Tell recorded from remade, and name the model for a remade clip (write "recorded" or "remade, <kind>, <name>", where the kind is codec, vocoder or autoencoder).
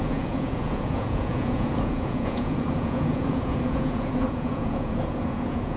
remade, vocoder, Vocos